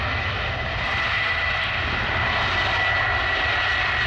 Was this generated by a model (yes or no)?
no